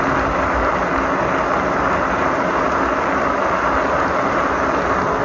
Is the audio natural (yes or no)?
yes